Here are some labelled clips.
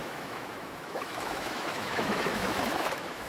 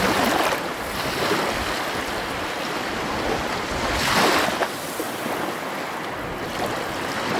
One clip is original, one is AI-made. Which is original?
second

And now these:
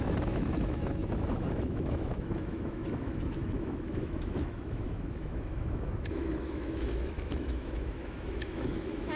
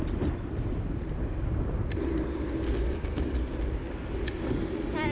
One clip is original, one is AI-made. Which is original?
second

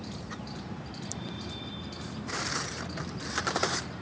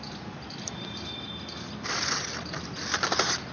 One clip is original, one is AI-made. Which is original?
second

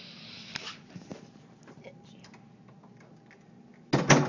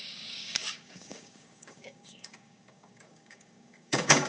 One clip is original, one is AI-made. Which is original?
first